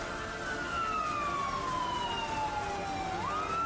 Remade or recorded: recorded